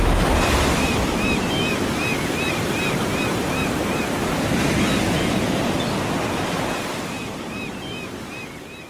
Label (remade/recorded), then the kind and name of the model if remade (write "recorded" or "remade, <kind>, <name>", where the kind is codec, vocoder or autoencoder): remade, vocoder, BigVGAN v2